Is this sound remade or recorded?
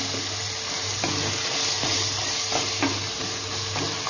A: recorded